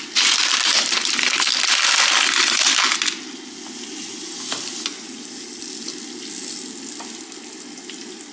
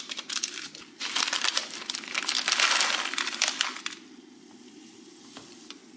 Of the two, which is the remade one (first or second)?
second